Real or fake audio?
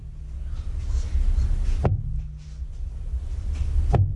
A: real